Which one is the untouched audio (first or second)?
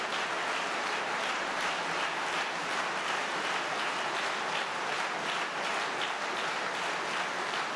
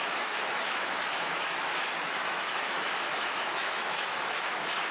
first